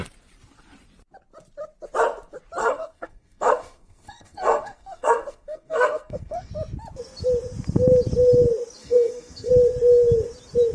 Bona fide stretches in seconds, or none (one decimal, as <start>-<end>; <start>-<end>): 0.0-2.6; 6.5-8.8; 9.5-10.7